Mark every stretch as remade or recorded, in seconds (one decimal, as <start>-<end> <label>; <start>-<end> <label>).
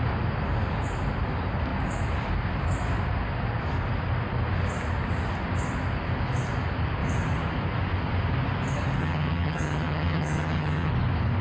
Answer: 0.0-9.0 recorded; 9.0-10.9 remade; 10.9-11.4 recorded